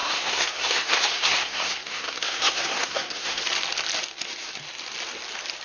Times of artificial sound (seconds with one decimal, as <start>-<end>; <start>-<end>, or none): 0.0-3.4